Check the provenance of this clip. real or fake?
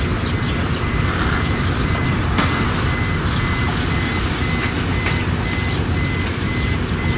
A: real